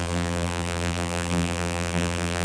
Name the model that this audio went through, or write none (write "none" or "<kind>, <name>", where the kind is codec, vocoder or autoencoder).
vocoder, BigVGAN v2